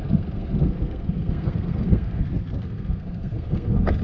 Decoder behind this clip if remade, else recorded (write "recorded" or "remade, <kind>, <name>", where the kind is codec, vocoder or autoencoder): remade, codec, SNAC